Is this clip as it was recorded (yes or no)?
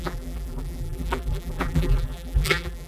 no